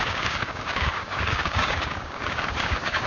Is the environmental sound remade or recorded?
remade